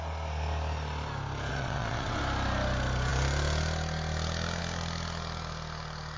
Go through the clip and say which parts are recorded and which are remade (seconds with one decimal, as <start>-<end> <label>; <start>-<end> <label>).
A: 0.0-1.5 recorded; 1.5-2.2 remade; 2.2-6.2 recorded